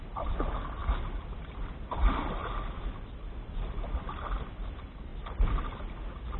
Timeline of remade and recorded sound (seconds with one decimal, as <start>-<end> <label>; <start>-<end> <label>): 0.0-5.1 remade; 5.1-6.4 recorded